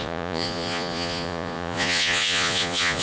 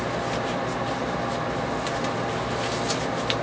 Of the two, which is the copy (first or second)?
first